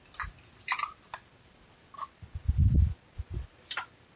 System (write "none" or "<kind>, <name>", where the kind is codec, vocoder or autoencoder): none